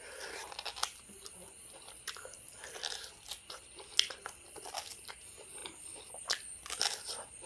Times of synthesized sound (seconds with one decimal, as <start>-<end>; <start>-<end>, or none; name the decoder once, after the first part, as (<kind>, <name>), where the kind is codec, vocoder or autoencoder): 5.6-6.2 (vocoder, BigVGAN v2)